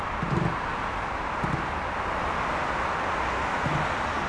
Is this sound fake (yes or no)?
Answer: no